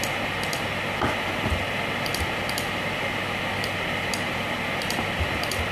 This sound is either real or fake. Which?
real